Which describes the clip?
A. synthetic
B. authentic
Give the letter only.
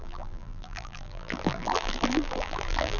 A